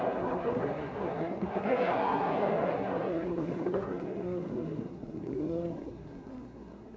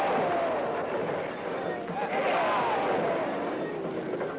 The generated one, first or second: first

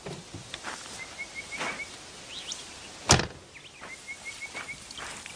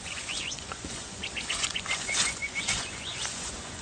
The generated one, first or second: second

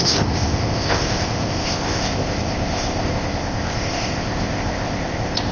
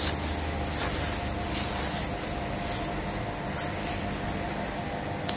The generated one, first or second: first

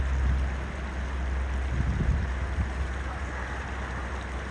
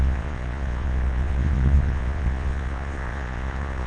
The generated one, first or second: second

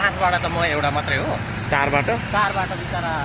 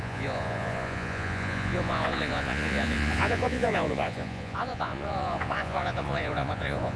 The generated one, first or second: second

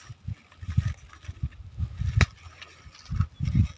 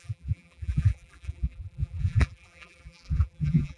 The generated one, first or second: second